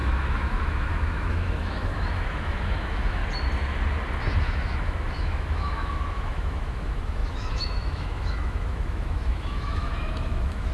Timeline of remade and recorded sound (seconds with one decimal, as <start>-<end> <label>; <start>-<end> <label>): 0.0-3.2 remade; 3.2-4.4 recorded; 4.4-10.7 remade